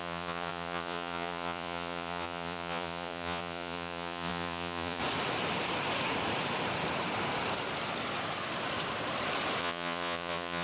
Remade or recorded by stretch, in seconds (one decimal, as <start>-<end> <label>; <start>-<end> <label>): 0.0-5.0 remade; 5.0-9.6 recorded; 9.6-10.6 remade